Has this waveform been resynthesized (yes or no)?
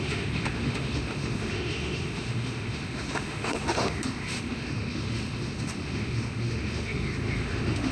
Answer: yes